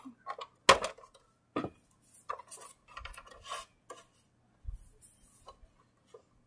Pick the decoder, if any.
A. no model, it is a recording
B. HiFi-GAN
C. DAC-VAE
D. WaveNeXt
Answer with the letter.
A